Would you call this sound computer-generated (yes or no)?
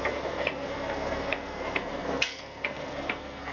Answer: yes